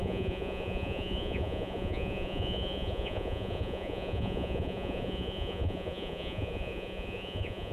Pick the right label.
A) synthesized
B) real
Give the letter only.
A